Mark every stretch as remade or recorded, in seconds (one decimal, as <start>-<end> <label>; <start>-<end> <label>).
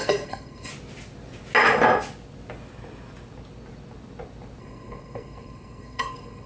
0.0-0.7 remade; 0.7-4.6 recorded; 4.6-6.5 remade